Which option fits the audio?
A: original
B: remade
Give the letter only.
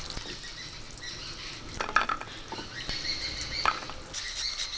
A